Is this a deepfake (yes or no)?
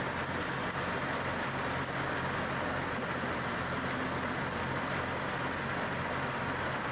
no